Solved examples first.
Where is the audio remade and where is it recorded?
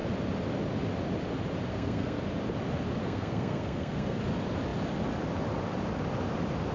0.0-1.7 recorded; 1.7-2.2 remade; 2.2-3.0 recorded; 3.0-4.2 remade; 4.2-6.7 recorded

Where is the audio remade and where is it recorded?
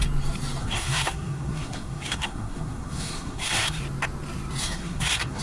0.0-0.6 recorded; 0.6-3.8 remade; 3.8-4.6 recorded; 4.6-5.4 remade